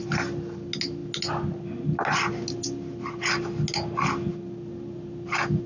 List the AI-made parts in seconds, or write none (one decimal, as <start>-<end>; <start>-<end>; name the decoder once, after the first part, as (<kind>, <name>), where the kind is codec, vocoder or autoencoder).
none